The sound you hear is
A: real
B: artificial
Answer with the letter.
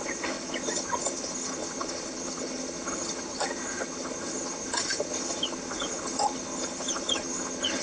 B